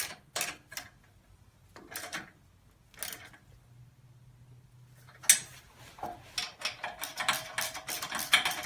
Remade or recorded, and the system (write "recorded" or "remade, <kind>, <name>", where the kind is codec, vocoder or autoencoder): recorded